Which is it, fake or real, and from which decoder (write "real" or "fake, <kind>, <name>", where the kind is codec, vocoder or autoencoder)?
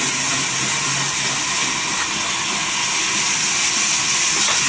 real